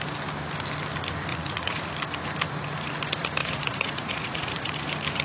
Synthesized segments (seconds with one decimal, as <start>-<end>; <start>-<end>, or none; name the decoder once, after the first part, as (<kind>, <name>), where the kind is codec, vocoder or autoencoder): 1.3-1.9 (vocoder, Vocos); 3.4-4.7